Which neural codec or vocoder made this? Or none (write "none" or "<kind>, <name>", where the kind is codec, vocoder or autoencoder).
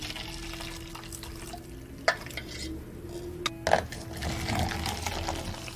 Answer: none